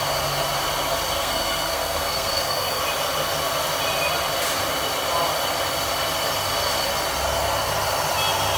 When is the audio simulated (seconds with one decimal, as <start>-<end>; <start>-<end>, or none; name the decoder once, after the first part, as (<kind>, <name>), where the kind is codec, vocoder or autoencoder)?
1.2-2.8 (codec, SNAC)